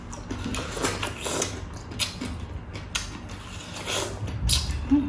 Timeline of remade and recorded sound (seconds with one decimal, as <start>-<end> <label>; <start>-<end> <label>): 0.0-5.1 recorded